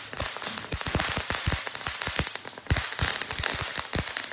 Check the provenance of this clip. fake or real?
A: real